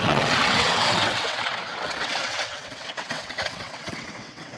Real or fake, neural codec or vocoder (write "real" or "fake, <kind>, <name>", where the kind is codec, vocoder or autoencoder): fake, vocoder, WaveNeXt